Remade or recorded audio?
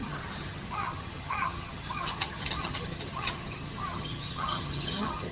remade